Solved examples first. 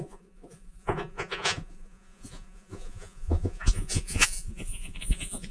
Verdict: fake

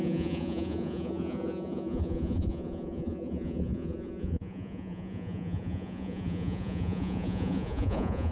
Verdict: fake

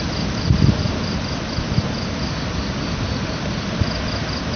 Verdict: real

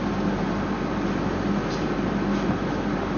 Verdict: real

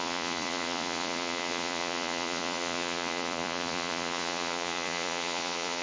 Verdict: fake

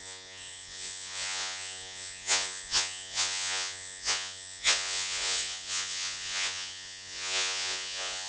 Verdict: fake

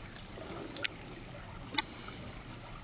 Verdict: real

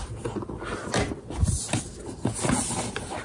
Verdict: real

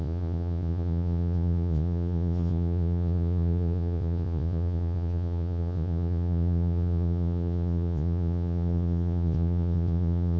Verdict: fake